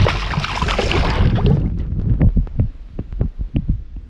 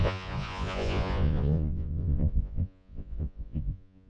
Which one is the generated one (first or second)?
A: second